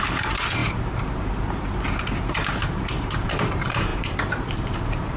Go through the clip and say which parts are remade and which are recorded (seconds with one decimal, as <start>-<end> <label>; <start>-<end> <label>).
0.0-5.2 remade